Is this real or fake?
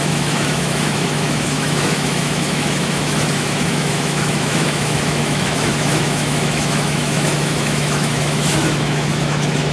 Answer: fake